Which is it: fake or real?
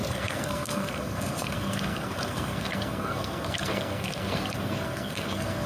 fake